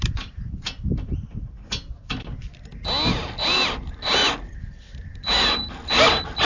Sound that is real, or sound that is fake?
real